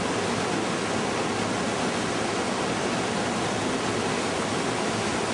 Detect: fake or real real